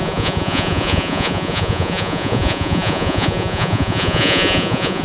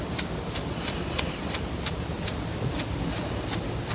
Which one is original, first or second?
second